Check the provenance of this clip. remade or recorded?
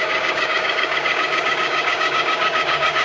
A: remade